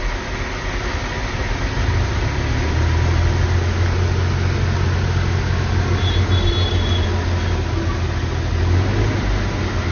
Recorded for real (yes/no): yes